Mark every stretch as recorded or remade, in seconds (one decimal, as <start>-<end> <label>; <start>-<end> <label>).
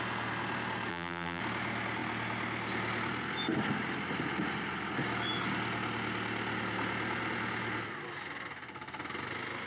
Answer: 0.0-0.9 recorded; 0.9-1.4 remade; 1.4-9.7 recorded